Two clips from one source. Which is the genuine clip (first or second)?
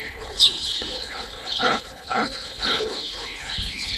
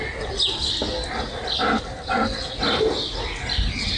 second